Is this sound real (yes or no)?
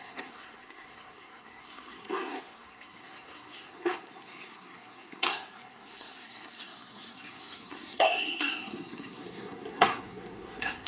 no